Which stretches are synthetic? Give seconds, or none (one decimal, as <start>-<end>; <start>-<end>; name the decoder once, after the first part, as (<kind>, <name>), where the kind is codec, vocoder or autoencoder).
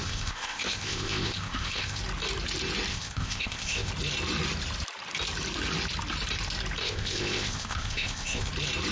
0.0-2.0 (codec, ZipCodec); 2.9-3.9; 6.8-8.5